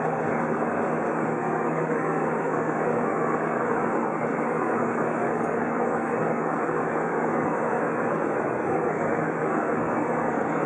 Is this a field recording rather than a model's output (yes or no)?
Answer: no